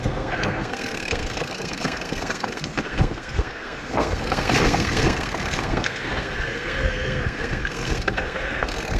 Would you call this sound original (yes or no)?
no